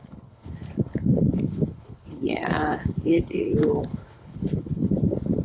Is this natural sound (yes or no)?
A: no